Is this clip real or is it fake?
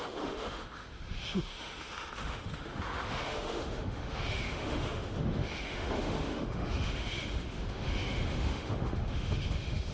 fake